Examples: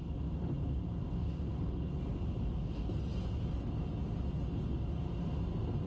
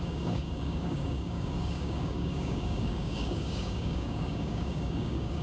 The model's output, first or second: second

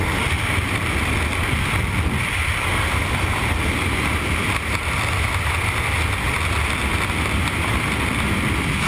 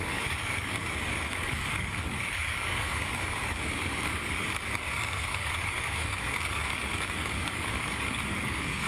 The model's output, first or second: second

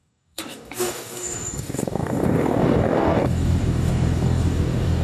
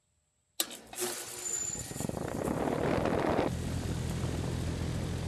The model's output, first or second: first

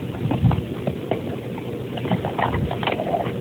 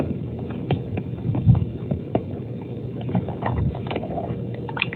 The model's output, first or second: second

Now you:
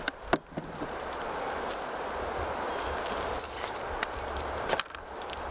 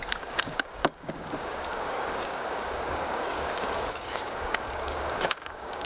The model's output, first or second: second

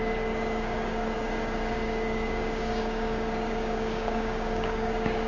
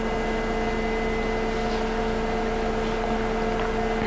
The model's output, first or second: first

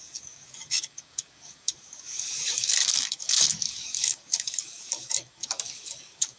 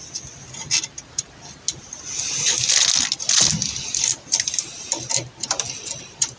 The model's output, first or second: first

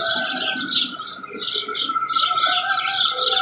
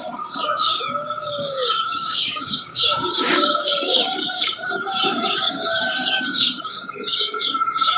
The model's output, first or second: second